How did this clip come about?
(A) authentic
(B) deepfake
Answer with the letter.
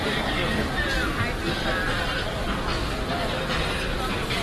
B